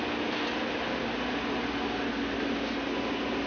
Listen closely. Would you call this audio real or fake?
real